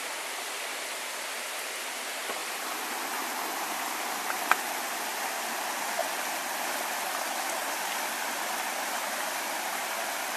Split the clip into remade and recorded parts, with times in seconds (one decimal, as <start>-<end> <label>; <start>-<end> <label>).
0.0-2.4 remade; 2.4-4.7 recorded; 4.7-6.0 remade; 6.0-8.5 recorded; 8.5-10.4 remade